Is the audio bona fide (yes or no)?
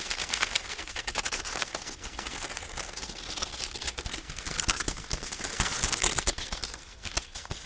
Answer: no